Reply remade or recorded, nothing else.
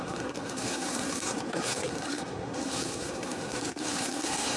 remade